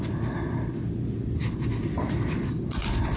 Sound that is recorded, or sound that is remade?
remade